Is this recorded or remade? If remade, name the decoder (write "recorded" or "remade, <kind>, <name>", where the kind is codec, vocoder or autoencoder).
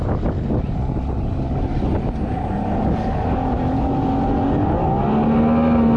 recorded